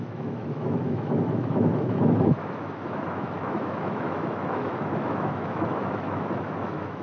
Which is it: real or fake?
fake